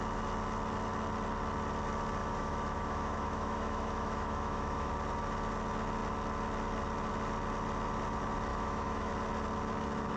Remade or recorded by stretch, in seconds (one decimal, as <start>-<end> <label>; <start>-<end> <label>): 0.0-2.2 recorded; 2.2-4.9 remade; 4.9-8.5 recorded; 8.5-9.1 remade; 9.1-10.2 recorded